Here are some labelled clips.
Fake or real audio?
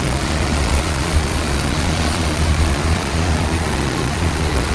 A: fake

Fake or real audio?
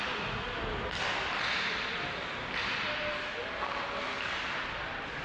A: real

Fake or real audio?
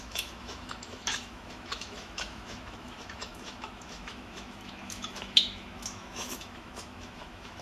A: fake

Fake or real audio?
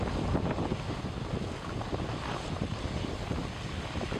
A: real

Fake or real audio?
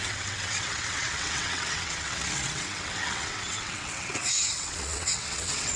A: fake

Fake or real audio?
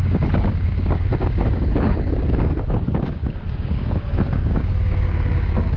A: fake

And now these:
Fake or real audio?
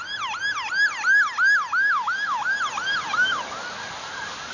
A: real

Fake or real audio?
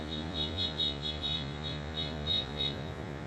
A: fake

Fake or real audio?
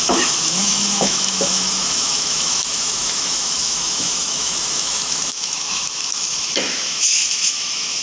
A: fake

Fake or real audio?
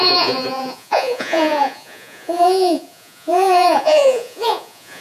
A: fake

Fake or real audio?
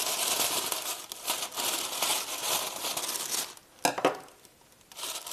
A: real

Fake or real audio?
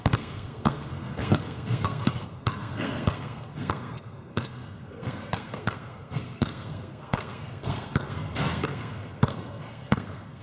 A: fake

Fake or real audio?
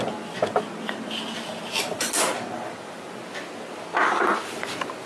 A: real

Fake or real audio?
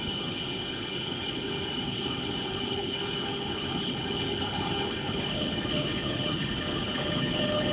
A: fake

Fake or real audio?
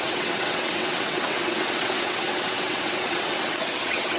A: fake